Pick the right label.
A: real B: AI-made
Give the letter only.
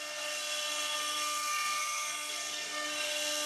B